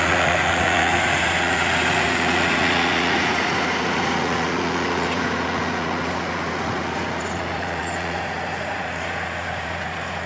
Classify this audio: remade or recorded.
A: remade